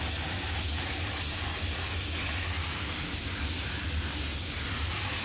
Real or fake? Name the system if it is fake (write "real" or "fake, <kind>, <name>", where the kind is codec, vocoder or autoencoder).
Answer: real